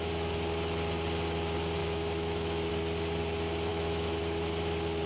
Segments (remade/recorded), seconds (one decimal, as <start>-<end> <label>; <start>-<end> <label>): 0.0-1.8 recorded; 1.8-2.7 remade; 2.7-3.7 recorded; 3.7-4.2 remade; 4.2-5.1 recorded